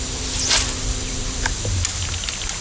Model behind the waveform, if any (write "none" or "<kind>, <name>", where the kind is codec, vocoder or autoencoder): none